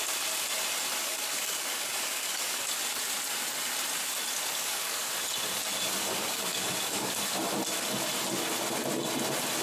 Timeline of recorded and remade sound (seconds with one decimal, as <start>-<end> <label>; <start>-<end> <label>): 0.0-1.0 recorded; 1.0-2.7 remade; 2.7-4.5 recorded; 4.5-5.1 remade; 5.1-6.0 recorded; 6.0-7.2 remade; 7.2-9.6 recorded